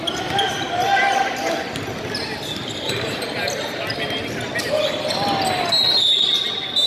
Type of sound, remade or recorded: recorded